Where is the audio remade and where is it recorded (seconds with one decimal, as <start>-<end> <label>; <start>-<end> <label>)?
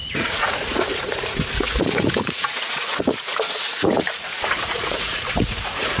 0.0-6.0 remade